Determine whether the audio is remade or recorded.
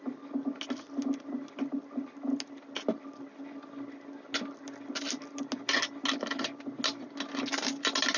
recorded